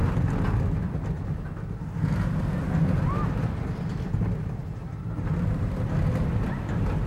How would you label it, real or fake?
real